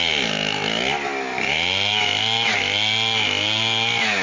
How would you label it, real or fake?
real